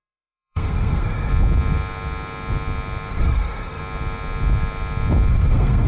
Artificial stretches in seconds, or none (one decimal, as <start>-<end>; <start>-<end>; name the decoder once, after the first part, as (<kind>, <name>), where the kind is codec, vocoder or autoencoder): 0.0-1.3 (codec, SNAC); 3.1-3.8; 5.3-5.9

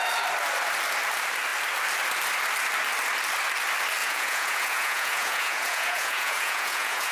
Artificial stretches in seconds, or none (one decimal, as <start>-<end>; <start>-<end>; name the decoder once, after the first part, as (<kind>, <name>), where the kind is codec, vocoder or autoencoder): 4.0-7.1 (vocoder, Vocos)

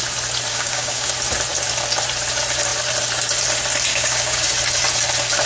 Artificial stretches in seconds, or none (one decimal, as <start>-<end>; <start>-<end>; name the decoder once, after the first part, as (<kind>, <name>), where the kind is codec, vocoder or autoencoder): 0.5-1.1 (codec, DAC); 3.9-4.5